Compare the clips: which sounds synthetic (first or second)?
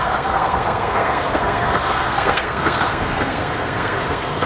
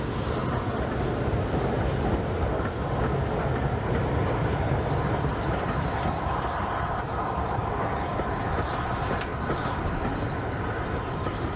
first